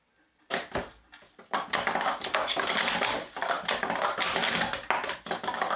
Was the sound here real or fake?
real